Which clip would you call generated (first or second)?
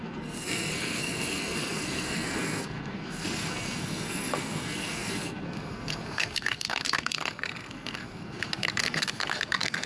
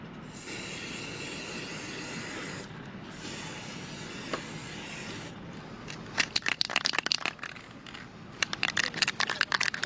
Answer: first